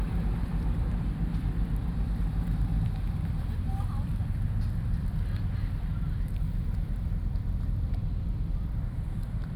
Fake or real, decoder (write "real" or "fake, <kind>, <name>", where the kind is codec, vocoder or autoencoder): fake, vocoder, BigVGAN v2